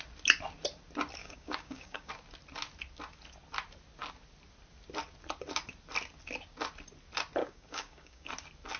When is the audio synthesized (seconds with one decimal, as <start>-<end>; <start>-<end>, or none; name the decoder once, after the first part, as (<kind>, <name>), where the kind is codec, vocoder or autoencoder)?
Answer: 1.2-2.1 (codec, DAC); 7.4-8.3